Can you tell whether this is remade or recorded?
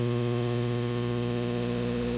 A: remade